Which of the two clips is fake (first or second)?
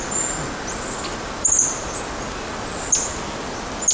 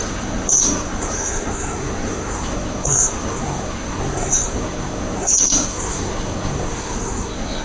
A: second